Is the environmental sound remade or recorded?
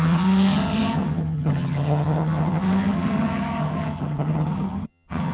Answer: remade